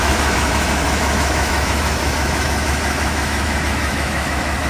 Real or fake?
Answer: fake